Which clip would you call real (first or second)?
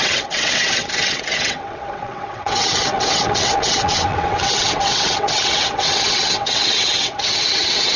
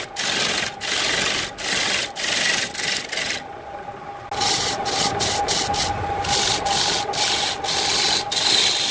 second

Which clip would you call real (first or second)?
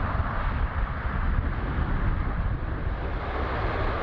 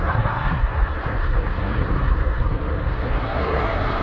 first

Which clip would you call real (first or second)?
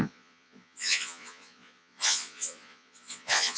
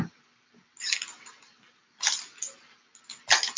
second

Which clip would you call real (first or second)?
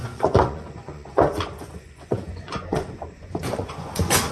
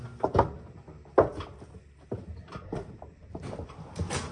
second